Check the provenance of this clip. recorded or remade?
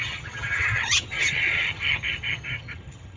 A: remade